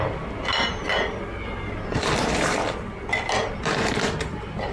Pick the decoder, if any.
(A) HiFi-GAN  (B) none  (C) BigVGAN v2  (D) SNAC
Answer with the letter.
B